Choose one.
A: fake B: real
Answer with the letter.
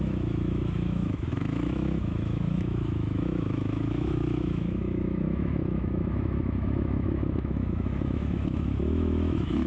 A